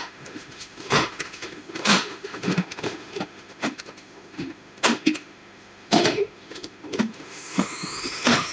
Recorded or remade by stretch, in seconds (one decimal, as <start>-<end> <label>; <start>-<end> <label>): 0.0-8.5 remade